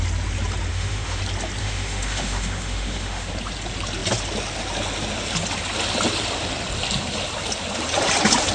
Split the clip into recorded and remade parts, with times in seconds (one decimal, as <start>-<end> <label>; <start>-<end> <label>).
0.0-0.7 recorded; 0.7-1.2 remade; 1.2-1.6 recorded; 1.6-3.3 remade; 3.3-8.5 recorded